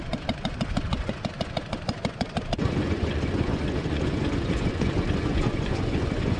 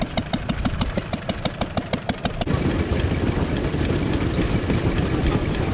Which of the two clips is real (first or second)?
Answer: second